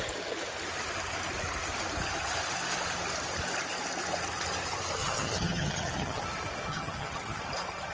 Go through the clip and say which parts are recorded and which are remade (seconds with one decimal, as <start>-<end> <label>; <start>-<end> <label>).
0.0-5.0 recorded; 5.0-6.2 remade; 6.2-6.7 recorded; 6.7-7.4 remade; 7.4-7.9 recorded